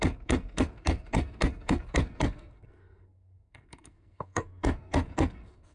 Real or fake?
fake